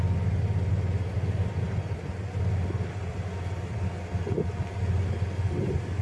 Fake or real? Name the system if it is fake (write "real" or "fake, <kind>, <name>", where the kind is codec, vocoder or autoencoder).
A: real